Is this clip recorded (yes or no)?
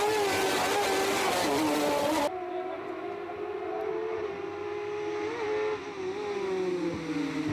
yes